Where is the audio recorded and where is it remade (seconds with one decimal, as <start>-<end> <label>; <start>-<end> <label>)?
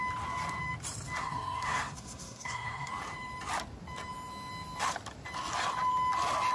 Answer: 0.0-1.2 recorded; 1.2-2.9 remade; 2.9-6.5 recorded